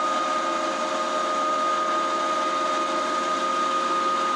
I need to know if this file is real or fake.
real